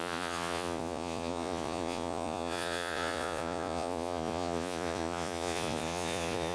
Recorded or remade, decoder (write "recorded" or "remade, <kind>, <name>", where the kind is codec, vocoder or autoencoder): remade, vocoder, Vocos